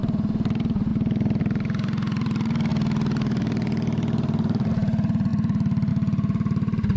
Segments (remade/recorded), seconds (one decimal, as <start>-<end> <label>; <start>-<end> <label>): 0.0-0.9 remade; 0.9-1.4 recorded; 1.4-7.0 remade